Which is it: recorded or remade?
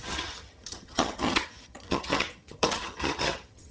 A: remade